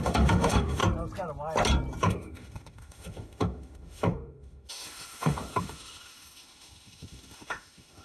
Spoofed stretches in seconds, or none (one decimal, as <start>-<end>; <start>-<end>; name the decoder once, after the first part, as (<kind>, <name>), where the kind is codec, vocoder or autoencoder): 0.0-0.8 (autoencoder, DAC-VAE); 2.0-8.0